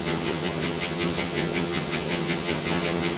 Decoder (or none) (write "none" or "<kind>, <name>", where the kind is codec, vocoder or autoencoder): vocoder, HiFi-GAN